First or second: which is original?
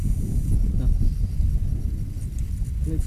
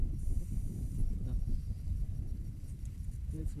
first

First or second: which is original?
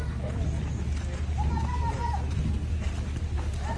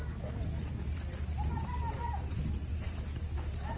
first